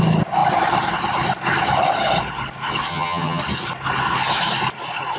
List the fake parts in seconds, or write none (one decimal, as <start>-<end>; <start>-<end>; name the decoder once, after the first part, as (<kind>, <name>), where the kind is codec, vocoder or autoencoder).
2.9-3.4 (vocoder, HiFi-GAN)